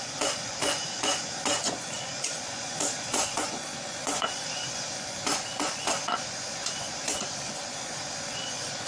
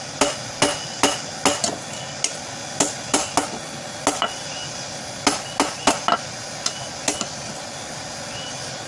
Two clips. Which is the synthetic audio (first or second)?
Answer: first